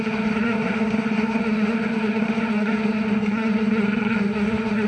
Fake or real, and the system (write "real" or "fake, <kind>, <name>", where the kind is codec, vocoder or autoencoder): fake, codec, SNAC